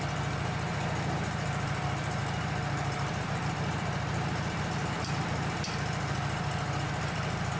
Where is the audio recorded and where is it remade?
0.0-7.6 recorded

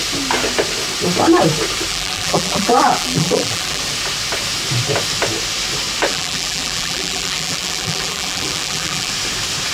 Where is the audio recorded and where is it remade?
0.0-1.9 recorded; 1.9-3.8 remade; 3.8-6.1 recorded; 6.1-9.1 remade; 9.1-9.7 recorded

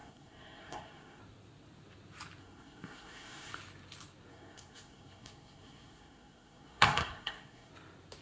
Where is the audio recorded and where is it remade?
0.0-1.2 remade; 1.2-2.4 recorded; 2.4-3.5 remade; 3.5-4.3 recorded; 4.3-7.7 remade; 7.7-8.2 recorded